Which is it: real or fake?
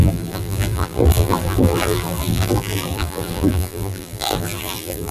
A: fake